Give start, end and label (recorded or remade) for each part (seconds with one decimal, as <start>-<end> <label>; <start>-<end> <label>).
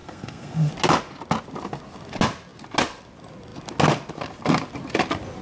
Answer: 0.0-0.7 remade; 0.7-5.4 recorded